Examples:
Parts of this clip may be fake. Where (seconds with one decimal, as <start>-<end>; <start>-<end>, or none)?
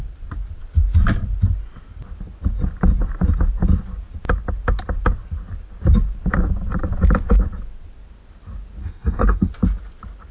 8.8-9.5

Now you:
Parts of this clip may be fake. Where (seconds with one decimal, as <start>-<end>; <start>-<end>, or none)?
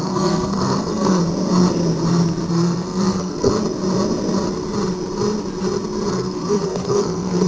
0.0-1.2; 2.5-3.5; 6.1-7.5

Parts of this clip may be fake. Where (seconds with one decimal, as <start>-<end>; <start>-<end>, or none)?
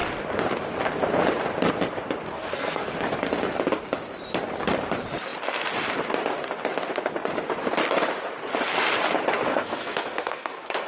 2.3-2.9; 9.5-10.9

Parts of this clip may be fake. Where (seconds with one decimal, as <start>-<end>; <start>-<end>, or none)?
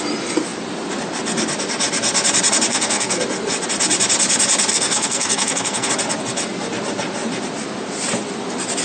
2.7-3.2; 4.7-5.9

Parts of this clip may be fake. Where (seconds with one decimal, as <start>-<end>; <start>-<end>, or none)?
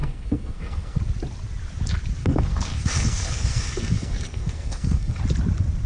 0.0-1.0; 2.2-5.2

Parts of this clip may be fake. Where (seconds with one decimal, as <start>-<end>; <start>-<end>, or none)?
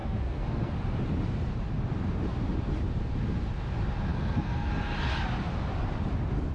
0.0-0.7; 4.1-4.7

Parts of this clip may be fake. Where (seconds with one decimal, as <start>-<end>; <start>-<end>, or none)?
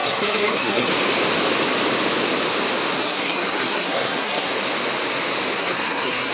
0.0-0.9; 3.0-4.5; 5.6-6.3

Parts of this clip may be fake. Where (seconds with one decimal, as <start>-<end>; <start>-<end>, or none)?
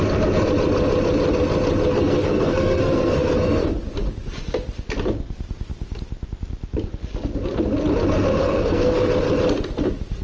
1.9-3.7; 8.4-9.1